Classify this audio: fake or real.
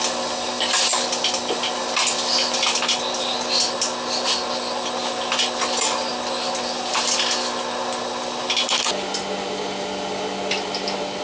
real